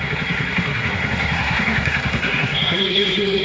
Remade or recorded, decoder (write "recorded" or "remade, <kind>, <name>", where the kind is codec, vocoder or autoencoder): remade, codec, SNAC